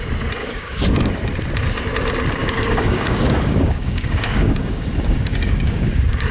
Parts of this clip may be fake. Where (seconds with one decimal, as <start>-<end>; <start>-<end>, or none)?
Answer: 0.4-1.1; 2.4-6.3